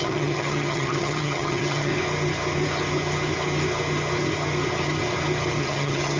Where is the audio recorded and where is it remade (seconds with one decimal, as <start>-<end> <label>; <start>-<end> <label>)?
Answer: 0.0-1.9 remade; 1.9-5.6 recorded; 5.6-6.2 remade